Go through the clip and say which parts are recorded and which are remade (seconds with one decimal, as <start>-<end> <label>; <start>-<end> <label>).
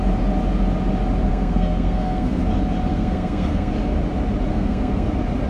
0.0-1.3 recorded; 1.3-2.4 remade; 2.4-2.9 recorded; 2.9-3.7 remade; 3.7-4.5 recorded; 4.5-5.1 remade; 5.1-5.5 recorded